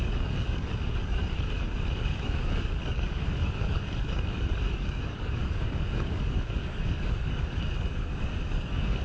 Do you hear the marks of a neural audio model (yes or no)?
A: yes